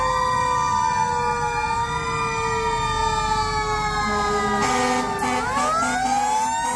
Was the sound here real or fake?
real